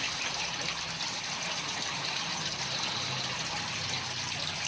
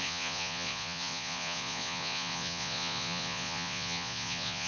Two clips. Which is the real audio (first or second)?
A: first